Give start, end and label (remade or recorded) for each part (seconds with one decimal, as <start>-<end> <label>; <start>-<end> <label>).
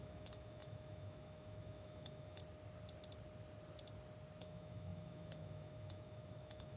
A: 0.0-2.4 remade; 2.4-4.4 recorded; 4.4-6.8 remade